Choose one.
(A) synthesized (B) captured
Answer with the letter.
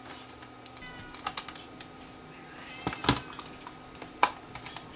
B